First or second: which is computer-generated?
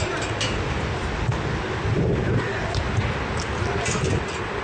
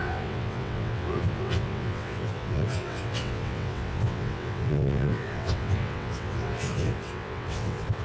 second